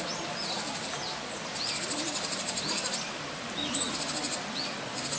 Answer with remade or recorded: recorded